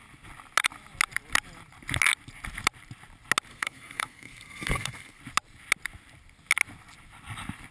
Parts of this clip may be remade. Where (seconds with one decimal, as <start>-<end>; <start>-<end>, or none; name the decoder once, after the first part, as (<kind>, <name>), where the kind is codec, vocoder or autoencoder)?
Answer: 3.5-5.2 (codec, SNAC)

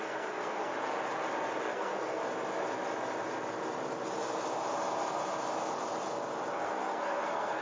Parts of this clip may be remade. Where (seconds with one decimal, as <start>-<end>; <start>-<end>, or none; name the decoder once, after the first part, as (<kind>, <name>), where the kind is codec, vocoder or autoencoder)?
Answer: 0.0-0.7 (codec, SNAC); 1.6-2.2; 6.5-7.6

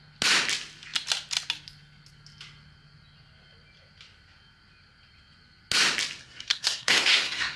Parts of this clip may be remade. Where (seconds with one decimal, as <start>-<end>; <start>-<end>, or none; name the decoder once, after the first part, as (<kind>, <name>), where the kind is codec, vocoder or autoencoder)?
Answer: 6.2-7.6 (codec, SNAC)

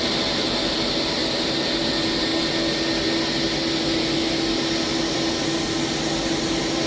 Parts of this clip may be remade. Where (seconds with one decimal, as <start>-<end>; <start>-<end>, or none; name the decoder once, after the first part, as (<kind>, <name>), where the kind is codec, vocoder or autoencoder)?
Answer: none

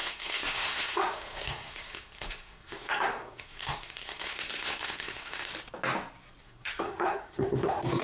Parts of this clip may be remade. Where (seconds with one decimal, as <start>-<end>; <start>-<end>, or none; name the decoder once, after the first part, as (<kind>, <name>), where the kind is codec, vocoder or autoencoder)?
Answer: 0.0-5.5 (codec, SNAC); 6.4-8.0

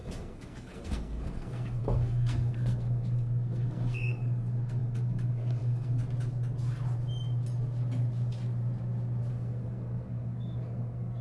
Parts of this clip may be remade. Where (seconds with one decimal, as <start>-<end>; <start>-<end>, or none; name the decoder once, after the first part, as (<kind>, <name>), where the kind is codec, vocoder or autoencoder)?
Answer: 0.0-6.0 (codec, SNAC); 9.3-11.2

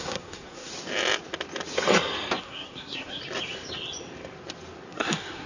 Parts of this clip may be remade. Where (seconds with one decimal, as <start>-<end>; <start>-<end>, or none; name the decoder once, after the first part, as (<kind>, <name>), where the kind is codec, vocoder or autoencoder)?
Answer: 0.0-0.7 (codec, SNAC); 2.4-3.2; 4.9-5.5

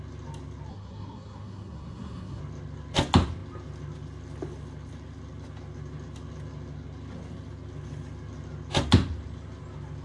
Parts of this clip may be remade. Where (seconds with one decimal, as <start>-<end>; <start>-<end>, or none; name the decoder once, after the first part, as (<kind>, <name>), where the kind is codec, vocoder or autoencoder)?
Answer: 0.7-2.4 (codec, SNAC)